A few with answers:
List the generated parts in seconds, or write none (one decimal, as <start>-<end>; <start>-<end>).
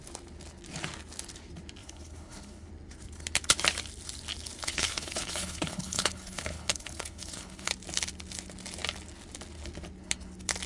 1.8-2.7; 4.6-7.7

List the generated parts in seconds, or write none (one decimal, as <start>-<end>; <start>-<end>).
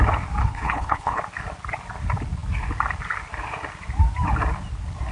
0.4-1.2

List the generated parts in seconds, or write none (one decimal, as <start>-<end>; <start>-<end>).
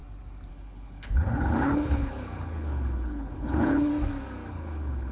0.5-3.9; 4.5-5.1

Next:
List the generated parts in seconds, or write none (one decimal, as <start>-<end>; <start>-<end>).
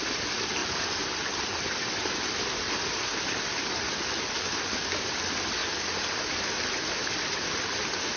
none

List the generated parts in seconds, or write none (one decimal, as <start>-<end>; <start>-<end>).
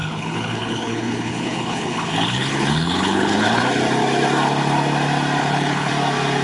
0.0-3.6; 5.4-5.9